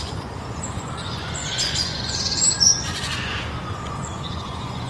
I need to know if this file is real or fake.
fake